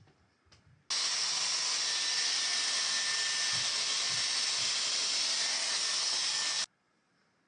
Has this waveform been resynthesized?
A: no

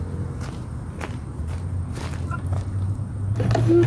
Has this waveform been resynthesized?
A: no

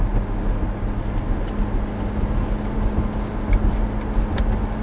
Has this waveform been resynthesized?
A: no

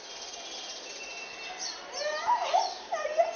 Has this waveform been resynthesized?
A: no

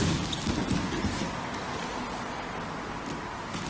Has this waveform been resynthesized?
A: no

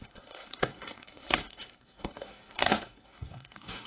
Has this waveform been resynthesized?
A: yes